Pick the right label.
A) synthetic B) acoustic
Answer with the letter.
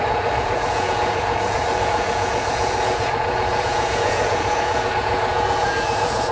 A